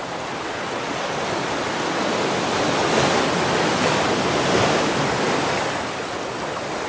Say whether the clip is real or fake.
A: real